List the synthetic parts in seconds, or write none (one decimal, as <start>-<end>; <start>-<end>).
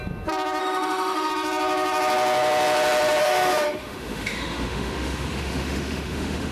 0.6-1.3; 3.2-6.5